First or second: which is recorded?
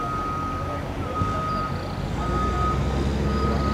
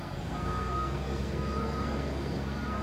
first